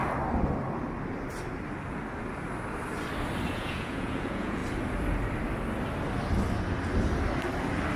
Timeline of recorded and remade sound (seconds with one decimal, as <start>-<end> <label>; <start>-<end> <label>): 0.0-3.5 recorded; 3.5-4.6 remade; 4.6-8.0 recorded